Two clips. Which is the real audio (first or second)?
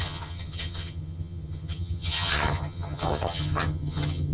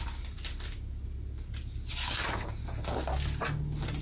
second